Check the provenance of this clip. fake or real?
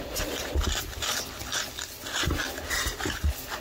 fake